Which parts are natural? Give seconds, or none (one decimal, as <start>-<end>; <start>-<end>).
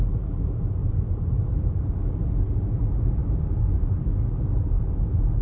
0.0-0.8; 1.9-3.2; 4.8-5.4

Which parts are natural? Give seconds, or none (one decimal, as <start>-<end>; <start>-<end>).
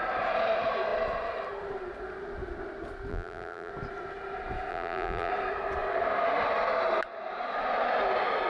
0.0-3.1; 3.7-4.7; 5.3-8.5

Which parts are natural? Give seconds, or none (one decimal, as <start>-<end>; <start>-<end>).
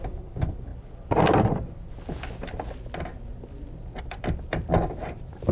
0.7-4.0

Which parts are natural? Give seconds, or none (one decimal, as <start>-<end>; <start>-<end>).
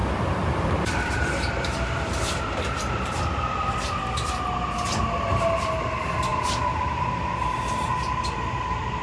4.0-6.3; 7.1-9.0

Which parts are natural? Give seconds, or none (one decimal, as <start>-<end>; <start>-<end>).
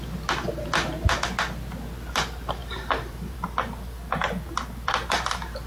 0.0-2.6